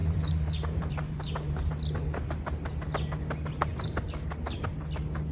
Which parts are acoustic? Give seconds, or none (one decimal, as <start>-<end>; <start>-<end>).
1.7-5.3